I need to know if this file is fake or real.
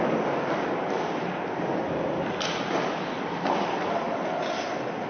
real